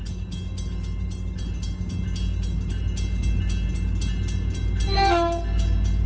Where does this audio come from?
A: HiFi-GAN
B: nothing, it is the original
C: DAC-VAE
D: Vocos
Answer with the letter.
B